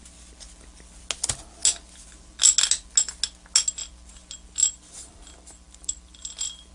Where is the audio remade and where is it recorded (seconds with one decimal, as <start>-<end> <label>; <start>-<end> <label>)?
0.0-4.6 recorded; 4.6-6.7 remade